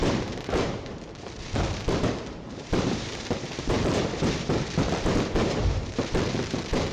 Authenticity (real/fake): fake